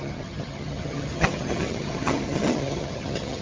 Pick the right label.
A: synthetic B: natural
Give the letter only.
A